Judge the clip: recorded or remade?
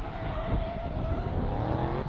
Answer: recorded